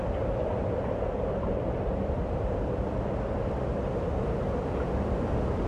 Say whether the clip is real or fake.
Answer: real